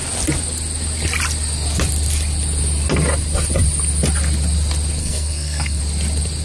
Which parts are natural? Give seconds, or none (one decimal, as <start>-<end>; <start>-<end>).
0.0-5.0; 5.8-6.4